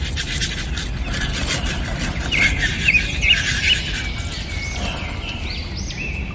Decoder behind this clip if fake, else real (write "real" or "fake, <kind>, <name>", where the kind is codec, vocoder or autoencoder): real